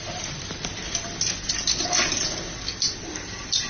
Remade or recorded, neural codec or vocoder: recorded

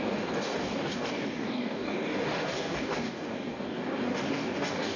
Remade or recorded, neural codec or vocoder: remade, codec, DAC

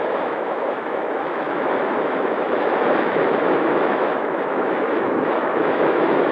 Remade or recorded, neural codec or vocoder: remade, autoencoder, DAC-VAE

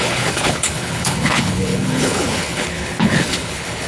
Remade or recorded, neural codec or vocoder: remade, codec, HILCodec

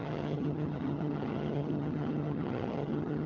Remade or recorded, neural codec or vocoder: remade, vocoder, HiFi-GAN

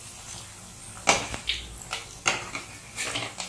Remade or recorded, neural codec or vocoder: recorded